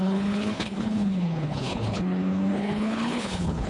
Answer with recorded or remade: remade